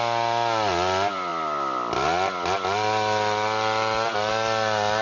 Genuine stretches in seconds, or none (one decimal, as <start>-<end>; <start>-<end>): 0.0-1.3; 4.3-5.0